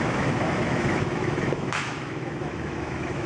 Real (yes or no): no